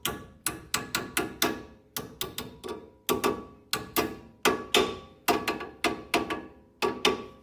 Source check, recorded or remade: recorded